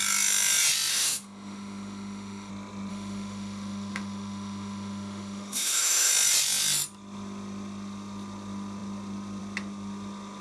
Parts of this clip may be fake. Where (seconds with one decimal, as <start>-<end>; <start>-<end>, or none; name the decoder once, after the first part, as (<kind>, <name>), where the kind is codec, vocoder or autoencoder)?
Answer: 0.9-2.5 (autoencoder, DAC-VAE); 2.9-6.1